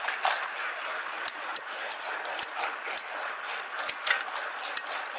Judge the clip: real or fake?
real